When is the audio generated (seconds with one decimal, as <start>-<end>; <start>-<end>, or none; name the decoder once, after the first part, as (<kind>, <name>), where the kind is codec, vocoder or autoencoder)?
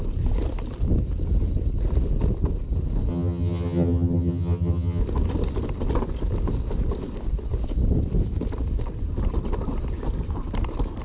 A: 3.1-5.0 (vocoder, HiFi-GAN)